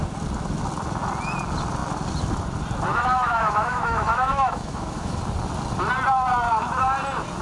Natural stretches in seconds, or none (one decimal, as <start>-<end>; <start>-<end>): 0.0-2.9; 5.2-7.4